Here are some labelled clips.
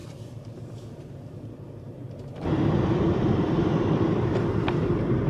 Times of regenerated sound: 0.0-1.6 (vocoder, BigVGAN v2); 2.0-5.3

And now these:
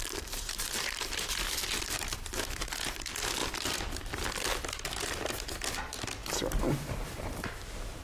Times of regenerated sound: 0.0-6.2 (vocoder, BigVGAN v2); 6.7-8.0

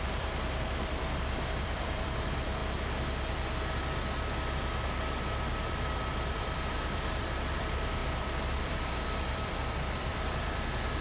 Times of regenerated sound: 0.0-2.6 (vocoder, BigVGAN v2); 5.5-11.0

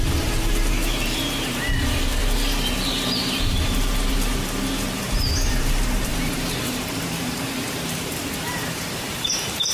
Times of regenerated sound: 0.0-2.2 (vocoder, BigVGAN v2); 3.3-9.7

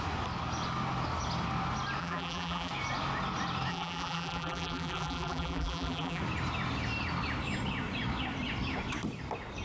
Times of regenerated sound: 2.0-2.7 (vocoder, BigVGAN v2); 3.7-6.2

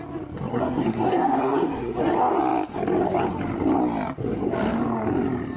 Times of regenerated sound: 0.5-2.0 (codec, SNAC)